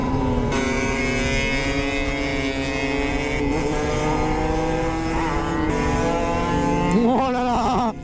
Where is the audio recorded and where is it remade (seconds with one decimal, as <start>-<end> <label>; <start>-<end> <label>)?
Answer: 0.0-1.0 remade; 1.0-8.0 recorded